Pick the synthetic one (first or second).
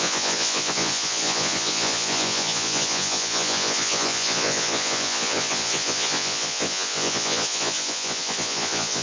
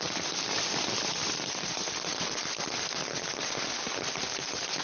first